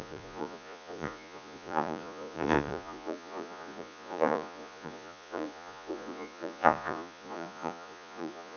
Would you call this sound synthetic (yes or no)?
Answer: yes